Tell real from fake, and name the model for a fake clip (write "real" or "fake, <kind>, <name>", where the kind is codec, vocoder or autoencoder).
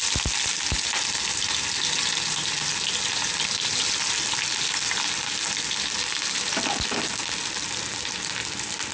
real